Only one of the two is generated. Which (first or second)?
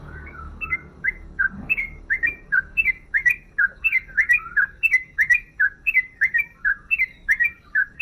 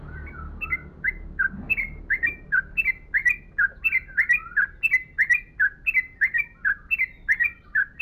first